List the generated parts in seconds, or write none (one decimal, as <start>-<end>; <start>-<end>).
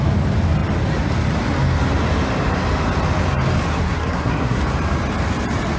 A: 3.7-4.6